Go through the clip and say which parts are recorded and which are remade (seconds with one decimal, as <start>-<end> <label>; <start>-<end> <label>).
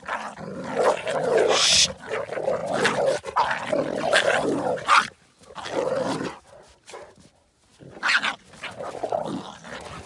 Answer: 0.0-10.1 recorded